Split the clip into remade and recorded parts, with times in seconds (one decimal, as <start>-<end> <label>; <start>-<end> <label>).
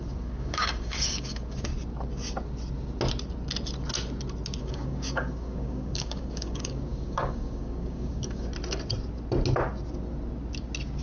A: 0.0-1.7 remade; 1.7-4.6 recorded; 4.6-8.5 remade; 8.5-11.0 recorded